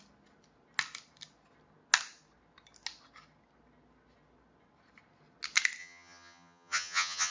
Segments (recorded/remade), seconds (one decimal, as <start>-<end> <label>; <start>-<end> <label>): 0.0-5.8 recorded; 5.8-7.3 remade